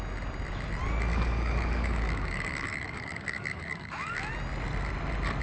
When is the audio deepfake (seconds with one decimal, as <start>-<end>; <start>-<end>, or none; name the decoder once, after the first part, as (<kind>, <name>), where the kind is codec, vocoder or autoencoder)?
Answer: 1.1-4.3 (codec, DAC)